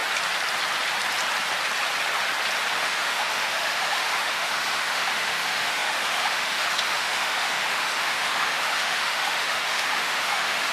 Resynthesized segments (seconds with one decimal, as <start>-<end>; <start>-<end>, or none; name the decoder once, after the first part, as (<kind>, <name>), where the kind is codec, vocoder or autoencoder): 2.7-10.7 (autoencoder, DAC-VAE)